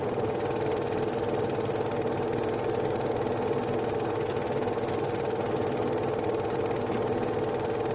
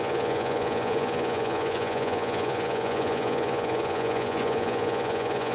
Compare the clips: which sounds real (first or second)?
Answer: first